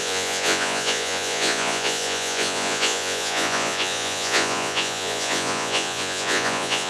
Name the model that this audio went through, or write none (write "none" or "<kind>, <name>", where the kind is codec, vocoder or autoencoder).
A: vocoder, Vocos